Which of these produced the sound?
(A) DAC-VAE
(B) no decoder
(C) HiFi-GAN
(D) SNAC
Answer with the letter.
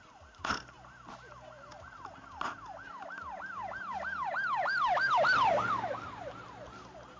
B